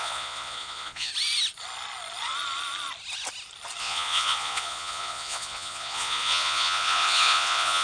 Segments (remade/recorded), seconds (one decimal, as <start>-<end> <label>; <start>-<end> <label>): 0.0-1.1 remade; 1.1-3.8 recorded; 3.8-7.8 remade